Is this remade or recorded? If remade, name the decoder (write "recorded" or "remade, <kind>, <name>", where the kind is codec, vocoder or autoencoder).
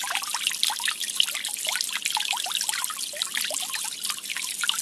recorded